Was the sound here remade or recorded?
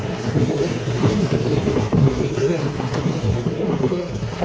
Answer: remade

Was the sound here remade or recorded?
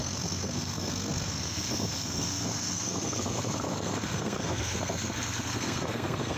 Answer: remade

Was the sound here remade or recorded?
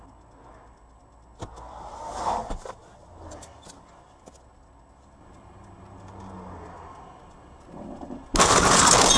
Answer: recorded